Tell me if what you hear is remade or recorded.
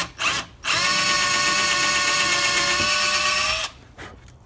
recorded